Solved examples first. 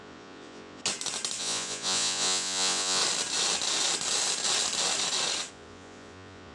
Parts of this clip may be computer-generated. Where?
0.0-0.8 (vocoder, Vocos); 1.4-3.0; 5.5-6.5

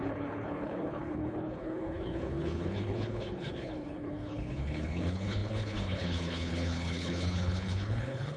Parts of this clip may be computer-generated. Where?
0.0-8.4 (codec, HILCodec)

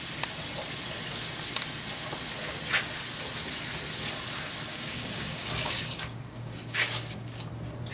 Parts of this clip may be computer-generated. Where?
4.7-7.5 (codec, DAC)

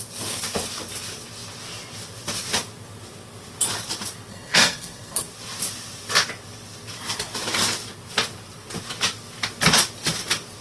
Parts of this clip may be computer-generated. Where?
4.3-5.2 (codec, SNAC)